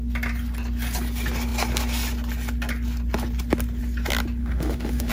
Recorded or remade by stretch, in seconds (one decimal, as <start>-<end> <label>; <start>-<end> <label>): 0.0-4.4 recorded; 4.4-5.1 remade